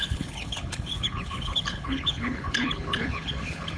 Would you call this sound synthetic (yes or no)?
yes